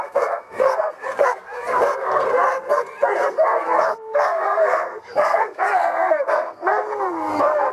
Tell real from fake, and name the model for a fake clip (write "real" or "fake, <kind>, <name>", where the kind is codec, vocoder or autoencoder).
fake, codec, SNAC